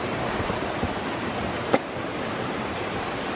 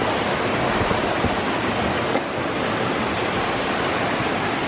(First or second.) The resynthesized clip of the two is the first